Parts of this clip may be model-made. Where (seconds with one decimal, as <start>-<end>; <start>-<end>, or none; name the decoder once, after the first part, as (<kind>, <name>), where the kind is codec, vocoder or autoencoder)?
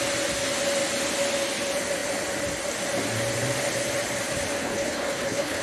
4.6-5.6 (codec, HILCodec)